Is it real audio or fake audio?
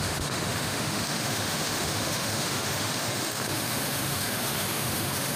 fake